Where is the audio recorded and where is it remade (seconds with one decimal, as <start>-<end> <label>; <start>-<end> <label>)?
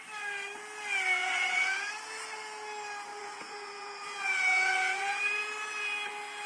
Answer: 0.0-1.2 recorded; 1.2-1.9 remade; 1.9-3.1 recorded; 3.1-5.2 remade; 5.2-6.5 recorded